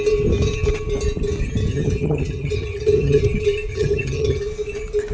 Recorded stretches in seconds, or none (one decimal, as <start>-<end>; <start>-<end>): 0.0-1.7; 3.2-3.7; 4.4-5.1